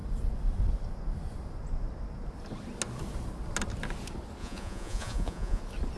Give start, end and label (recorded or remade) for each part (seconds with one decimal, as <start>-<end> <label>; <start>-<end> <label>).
0.0-4.4 recorded; 4.4-5.6 remade; 5.6-6.0 recorded